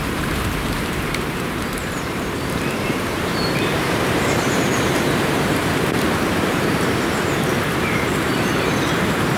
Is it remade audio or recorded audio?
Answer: remade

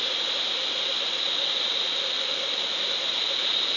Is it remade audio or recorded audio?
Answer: recorded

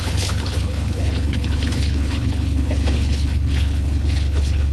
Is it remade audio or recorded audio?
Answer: remade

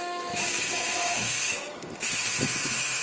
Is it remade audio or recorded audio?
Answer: remade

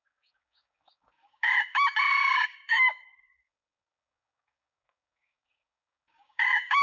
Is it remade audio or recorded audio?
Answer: remade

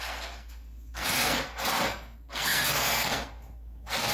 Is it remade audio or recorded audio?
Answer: remade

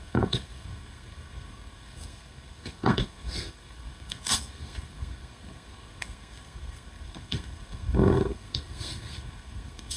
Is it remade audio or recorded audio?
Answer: remade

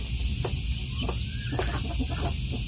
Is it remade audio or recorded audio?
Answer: recorded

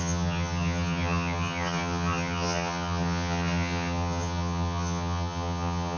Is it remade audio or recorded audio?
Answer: remade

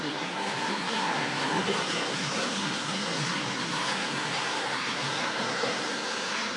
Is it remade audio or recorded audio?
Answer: remade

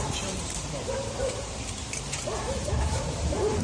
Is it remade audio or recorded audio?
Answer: remade